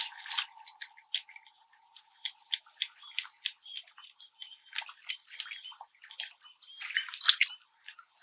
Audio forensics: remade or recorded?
recorded